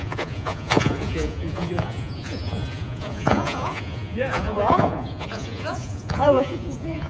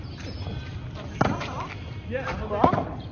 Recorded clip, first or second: second